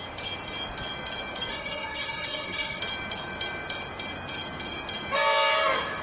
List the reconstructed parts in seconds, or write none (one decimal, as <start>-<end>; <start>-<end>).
1.5-2.8